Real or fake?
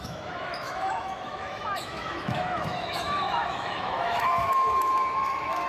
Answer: fake